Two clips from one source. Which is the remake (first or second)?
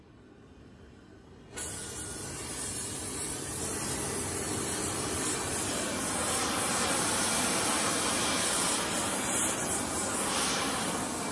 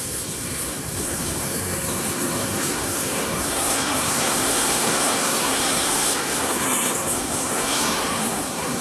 second